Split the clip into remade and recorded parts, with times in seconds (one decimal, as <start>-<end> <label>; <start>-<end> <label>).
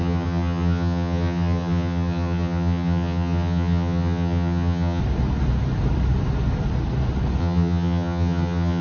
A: 0.0-5.0 remade; 5.0-7.4 recorded; 7.4-8.8 remade